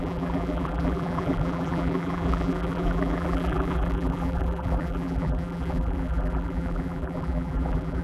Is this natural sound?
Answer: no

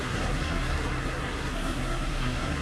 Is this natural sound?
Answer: no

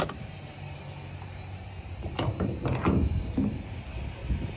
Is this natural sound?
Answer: yes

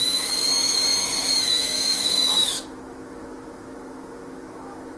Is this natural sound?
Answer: no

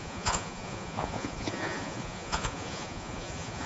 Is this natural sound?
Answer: no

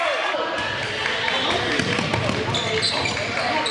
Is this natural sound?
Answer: yes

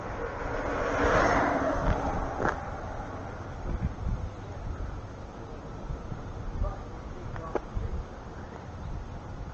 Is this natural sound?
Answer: yes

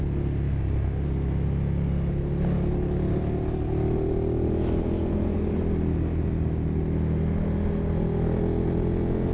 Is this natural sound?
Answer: yes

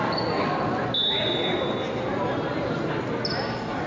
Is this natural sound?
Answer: yes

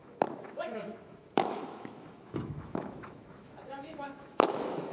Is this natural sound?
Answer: no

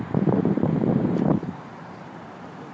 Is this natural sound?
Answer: no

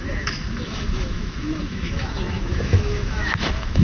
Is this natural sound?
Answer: no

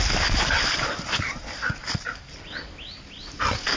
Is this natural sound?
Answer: yes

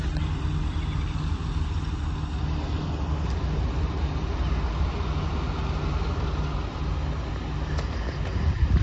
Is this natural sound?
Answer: yes